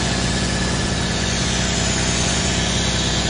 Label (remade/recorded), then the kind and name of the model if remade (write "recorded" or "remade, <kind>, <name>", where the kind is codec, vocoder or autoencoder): remade, vocoder, Vocos